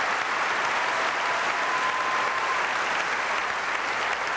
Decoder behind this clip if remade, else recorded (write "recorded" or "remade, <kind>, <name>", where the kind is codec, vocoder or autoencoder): recorded